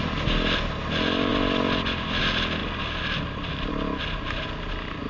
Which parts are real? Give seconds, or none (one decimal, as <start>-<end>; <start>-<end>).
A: 0.0-1.3; 2.2-2.6; 3.7-5.1